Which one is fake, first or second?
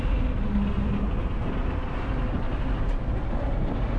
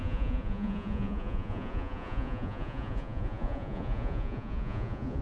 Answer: second